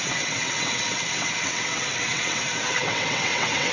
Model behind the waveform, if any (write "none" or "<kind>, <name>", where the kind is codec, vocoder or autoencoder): vocoder, WaveNeXt